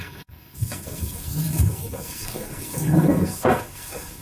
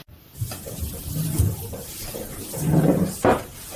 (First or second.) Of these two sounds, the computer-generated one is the first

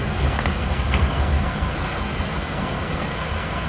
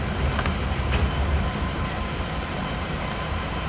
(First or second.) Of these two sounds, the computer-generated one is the first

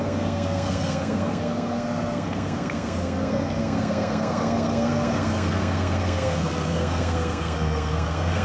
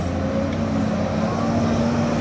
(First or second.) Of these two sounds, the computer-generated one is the first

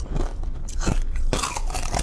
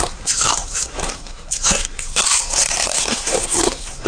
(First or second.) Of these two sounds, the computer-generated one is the second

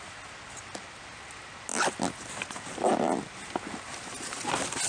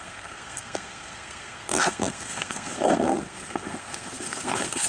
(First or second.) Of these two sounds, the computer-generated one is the second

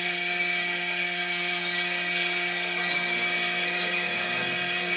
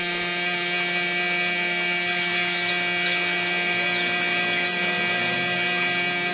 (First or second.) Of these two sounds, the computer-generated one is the first